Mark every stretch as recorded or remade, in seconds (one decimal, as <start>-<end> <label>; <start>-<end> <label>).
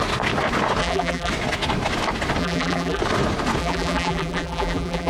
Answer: 0.0-0.8 recorded; 0.8-1.3 remade; 1.3-2.4 recorded; 2.4-3.0 remade; 3.0-3.6 recorded; 3.6-5.1 remade